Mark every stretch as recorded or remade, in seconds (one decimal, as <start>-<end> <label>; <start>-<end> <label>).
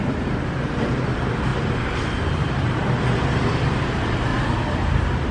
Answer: 0.0-4.3 remade; 4.3-5.3 recorded